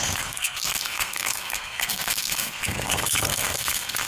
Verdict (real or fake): fake